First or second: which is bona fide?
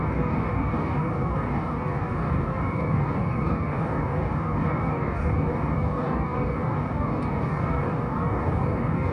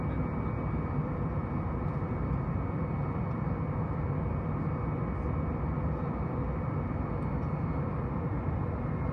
second